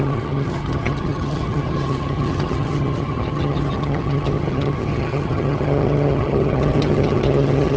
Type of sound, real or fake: fake